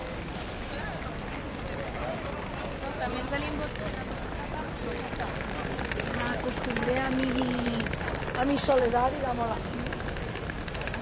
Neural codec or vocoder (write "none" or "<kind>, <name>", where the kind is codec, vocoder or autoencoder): none